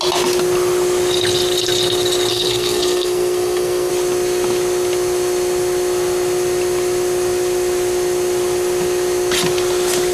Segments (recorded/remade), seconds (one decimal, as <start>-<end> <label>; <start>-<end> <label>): 0.0-2.3 recorded; 2.3-3.9 remade; 3.9-10.1 recorded

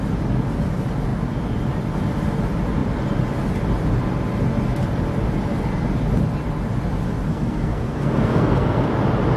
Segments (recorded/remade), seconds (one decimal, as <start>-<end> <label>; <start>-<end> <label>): 0.0-7.3 recorded; 7.3-8.9 remade; 8.9-9.4 recorded

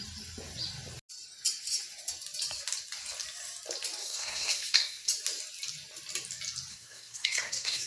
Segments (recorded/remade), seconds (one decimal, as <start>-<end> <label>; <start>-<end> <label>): 0.0-4.0 recorded; 4.0-5.1 remade; 5.1-6.7 recorded; 6.7-7.9 remade

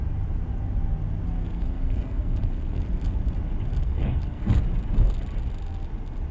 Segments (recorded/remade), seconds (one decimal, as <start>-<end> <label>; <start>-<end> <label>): 0.0-1.4 recorded; 1.4-2.8 remade; 2.8-3.8 recorded; 3.8-4.5 remade; 4.5-6.3 recorded

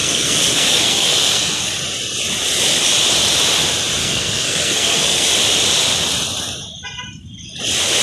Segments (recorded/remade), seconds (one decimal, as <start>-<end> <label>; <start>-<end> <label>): 0.0-1.7 remade; 1.7-4.0 recorded; 4.0-5.3 remade; 5.3-8.0 recorded

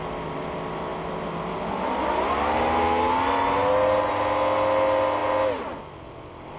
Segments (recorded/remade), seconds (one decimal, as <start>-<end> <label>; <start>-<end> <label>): 0.0-6.6 recorded